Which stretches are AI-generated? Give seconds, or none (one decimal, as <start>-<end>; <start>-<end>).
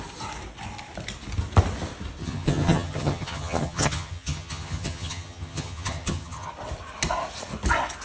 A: 2.2-6.5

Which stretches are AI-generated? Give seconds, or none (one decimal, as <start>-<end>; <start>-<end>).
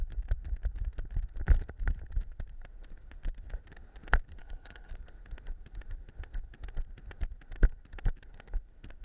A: 4.4-4.9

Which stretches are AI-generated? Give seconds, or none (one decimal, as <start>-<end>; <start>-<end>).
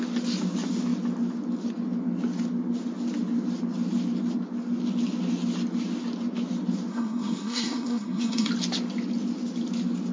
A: 6.9-8.5